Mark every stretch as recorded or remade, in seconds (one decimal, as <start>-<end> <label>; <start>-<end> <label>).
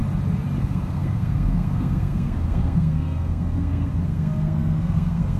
0.0-0.6 recorded; 0.6-5.4 remade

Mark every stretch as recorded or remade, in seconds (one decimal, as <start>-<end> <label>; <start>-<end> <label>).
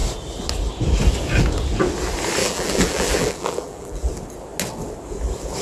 0.0-2.4 recorded; 2.4-4.1 remade; 4.1-5.6 recorded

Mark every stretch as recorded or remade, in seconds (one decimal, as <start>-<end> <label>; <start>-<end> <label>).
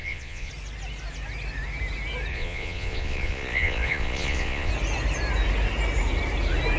0.0-0.5 remade; 0.5-2.3 recorded; 2.3-4.7 remade; 4.7-6.8 recorded